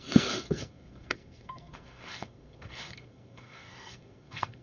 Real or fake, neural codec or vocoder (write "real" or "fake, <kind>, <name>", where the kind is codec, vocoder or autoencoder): fake, codec, SNAC